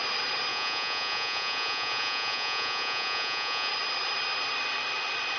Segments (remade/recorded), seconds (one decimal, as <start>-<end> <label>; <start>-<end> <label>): 0.0-0.5 recorded; 0.5-3.7 remade; 3.7-5.4 recorded